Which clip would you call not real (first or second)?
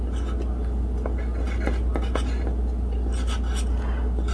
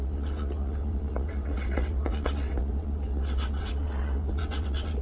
second